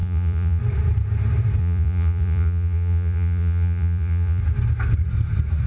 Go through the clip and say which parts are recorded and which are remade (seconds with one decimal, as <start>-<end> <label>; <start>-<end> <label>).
0.0-0.6 remade; 0.6-1.6 recorded; 1.6-4.4 remade; 4.4-5.7 recorded